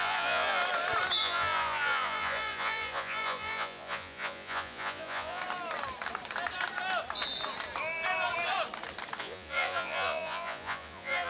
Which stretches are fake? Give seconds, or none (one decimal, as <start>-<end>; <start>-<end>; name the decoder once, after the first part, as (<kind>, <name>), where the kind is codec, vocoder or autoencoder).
0.0-0.6 (vocoder, Vocos); 1.2-5.4; 9.2-11.3